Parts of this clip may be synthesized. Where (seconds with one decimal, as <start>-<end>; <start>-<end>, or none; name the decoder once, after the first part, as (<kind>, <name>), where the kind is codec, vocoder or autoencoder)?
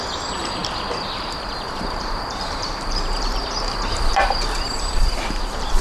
0.0-5.8 (vocoder, BigVGAN v2)